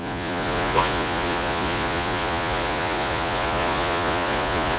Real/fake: fake